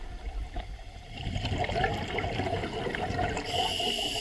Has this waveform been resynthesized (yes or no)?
yes